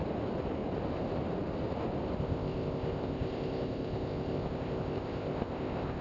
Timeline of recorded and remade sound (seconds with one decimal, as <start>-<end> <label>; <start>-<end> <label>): 0.0-2.2 recorded; 2.2-6.0 remade